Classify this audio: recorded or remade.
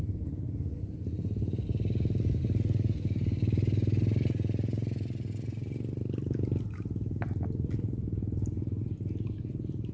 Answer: recorded